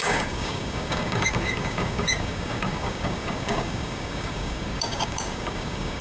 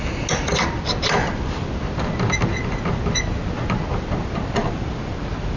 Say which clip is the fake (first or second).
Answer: first